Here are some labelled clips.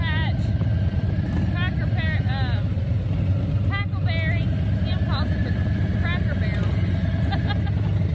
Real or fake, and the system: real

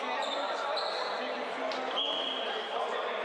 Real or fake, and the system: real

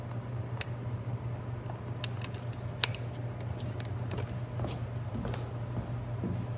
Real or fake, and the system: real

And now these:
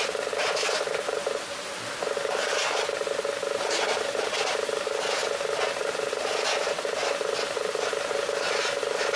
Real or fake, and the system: real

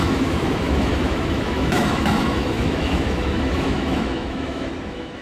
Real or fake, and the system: fake, autoencoder, DAC-VAE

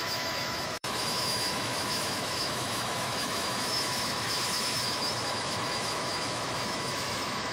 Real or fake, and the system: fake, autoencoder, DAC-VAE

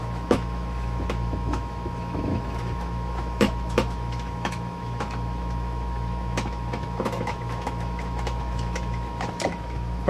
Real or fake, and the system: fake, autoencoder, DAC-VAE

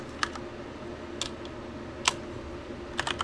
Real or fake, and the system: real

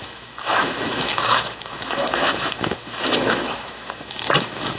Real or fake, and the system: fake, autoencoder, DAC-VAE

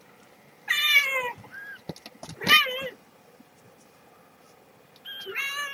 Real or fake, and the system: real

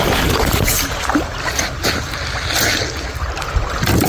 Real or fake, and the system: real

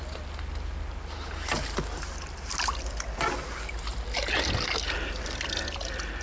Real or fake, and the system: real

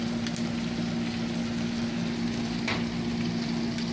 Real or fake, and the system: real